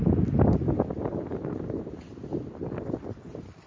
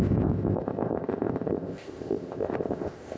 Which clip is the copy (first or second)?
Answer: second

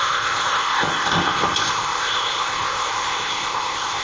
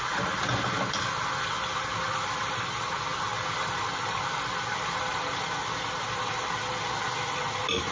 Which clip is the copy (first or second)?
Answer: first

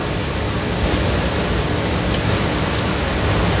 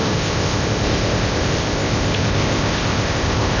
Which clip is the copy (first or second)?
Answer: second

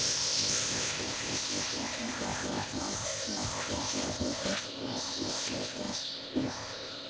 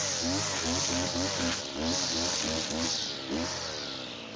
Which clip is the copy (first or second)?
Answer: first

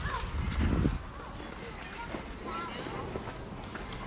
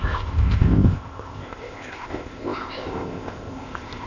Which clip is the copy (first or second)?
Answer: second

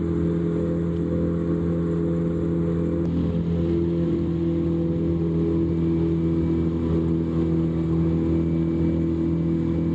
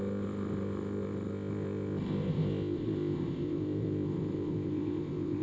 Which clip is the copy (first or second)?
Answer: second